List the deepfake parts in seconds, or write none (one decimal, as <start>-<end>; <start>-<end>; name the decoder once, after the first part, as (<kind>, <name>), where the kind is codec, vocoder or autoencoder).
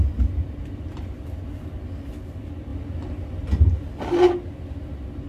none